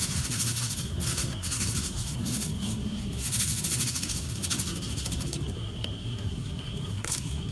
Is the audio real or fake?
fake